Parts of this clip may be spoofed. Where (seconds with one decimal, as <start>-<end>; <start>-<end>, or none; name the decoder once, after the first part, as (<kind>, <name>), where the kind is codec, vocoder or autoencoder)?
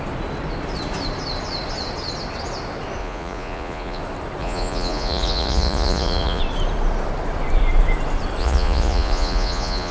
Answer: 3.0-4.0 (vocoder, Vocos); 4.4-6.4; 8.4-9.9